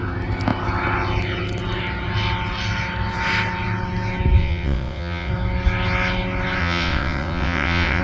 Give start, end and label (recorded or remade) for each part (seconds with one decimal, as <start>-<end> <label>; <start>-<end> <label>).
0.0-4.4 recorded; 4.4-5.3 remade; 5.3-6.6 recorded; 6.6-8.0 remade